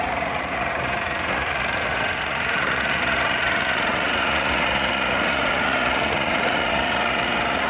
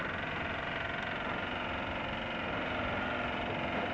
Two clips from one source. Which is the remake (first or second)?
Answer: first